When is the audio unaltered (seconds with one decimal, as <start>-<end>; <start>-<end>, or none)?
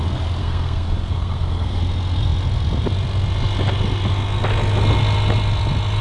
0.0-0.4; 1.8-6.0